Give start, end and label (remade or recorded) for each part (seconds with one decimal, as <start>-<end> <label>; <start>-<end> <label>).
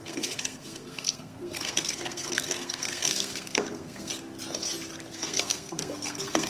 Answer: 0.0-4.1 remade; 4.1-5.1 recorded; 5.1-6.5 remade